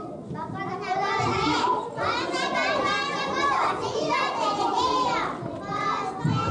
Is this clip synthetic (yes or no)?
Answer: no